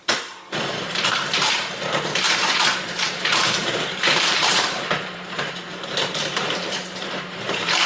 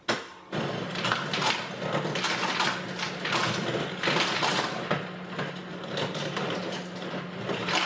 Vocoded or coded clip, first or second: first